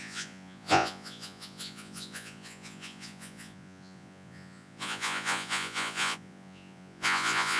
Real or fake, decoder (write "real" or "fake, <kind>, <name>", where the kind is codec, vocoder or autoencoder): fake, vocoder, Vocos